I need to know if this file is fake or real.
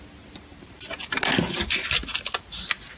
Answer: real